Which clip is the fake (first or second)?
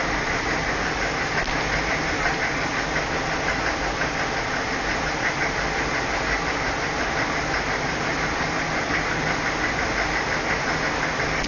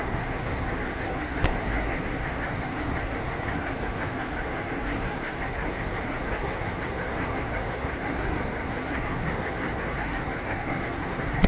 second